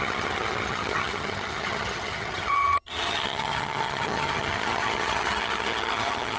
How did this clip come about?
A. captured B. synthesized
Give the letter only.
B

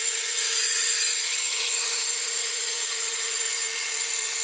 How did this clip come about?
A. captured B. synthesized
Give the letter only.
B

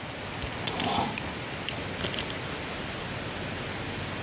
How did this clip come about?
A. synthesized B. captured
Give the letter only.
B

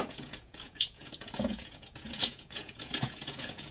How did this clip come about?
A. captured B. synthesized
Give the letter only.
B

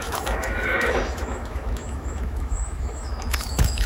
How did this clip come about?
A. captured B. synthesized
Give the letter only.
B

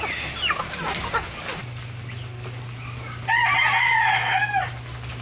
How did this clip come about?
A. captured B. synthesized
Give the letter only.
A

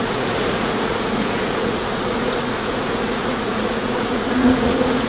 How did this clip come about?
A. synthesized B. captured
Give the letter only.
A